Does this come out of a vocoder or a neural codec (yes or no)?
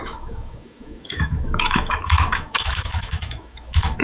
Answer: yes